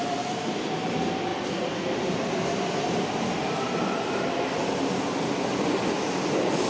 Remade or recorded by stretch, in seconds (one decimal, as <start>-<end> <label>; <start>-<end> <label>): 0.0-6.7 recorded